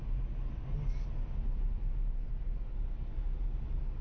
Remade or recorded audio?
recorded